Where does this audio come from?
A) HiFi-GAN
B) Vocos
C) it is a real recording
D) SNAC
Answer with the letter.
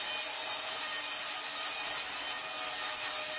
C